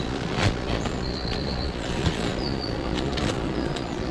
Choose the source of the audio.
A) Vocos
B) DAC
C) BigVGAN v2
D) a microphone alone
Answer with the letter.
A